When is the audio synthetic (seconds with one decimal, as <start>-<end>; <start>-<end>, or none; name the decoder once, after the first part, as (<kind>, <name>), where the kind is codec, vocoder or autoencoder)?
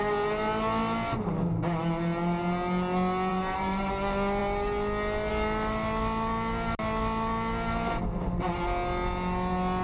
3.3-3.9 (vocoder, BigVGAN v2)